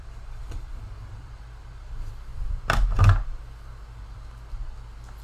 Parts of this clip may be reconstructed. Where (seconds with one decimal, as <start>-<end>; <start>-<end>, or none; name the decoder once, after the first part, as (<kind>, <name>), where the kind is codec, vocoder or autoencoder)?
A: 0.0-2.3 (vocoder, BigVGAN v2)